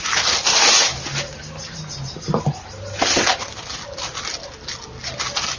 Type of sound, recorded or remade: recorded